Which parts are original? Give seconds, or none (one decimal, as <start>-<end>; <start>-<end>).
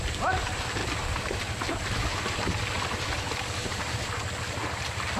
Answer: 0.0-0.8; 3.9-5.2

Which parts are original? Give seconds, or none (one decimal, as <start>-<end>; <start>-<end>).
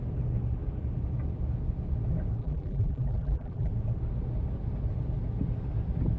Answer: 0.0-2.4; 3.7-6.2